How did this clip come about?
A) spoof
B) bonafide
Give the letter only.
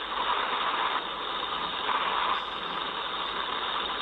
B